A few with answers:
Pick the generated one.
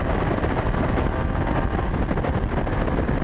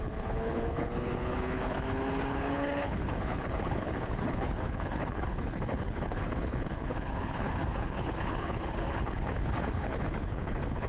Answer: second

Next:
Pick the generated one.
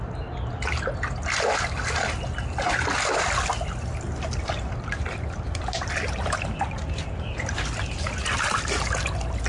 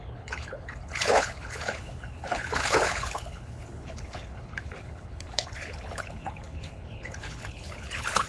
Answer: second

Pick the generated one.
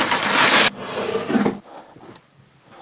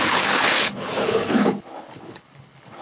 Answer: second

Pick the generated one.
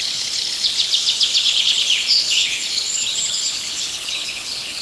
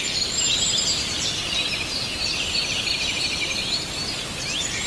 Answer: first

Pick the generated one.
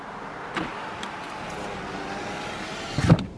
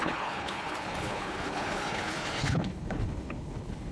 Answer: second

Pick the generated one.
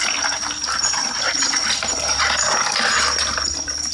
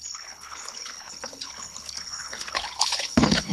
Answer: second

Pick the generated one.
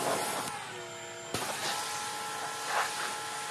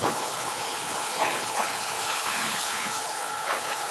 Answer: second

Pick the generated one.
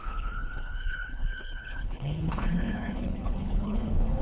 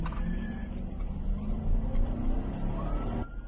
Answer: first